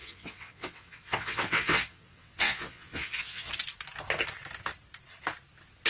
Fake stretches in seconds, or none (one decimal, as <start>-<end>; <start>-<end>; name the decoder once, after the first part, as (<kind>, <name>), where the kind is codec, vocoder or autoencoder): 0.0-3.5 (vocoder, WaveNeXt)